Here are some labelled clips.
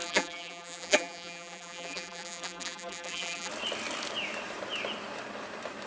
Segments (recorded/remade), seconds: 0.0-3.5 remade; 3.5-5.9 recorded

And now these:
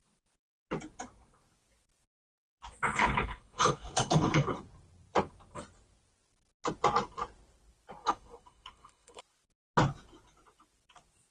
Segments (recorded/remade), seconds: 0.0-2.9 recorded; 2.9-4.6 remade; 4.6-8.0 recorded; 8.0-9.2 remade; 9.2-11.3 recorded